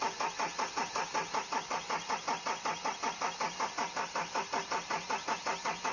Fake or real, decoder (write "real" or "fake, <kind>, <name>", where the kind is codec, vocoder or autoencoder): real